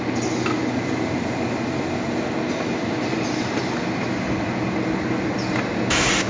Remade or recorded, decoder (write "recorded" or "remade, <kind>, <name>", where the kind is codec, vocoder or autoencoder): recorded